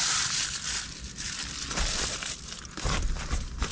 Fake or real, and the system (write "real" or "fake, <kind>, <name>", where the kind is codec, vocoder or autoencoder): real